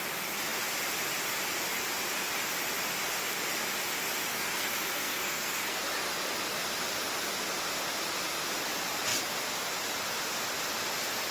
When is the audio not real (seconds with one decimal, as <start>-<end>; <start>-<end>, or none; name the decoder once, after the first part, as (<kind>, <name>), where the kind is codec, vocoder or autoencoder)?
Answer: 4.3-5.8 (codec, SNAC)